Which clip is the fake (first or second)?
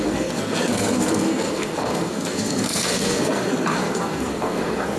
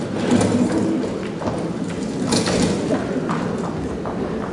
first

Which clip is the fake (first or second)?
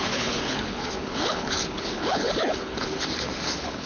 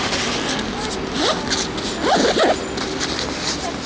first